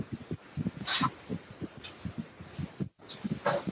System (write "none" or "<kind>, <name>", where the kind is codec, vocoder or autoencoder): none